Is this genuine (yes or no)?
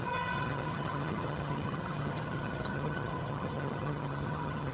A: no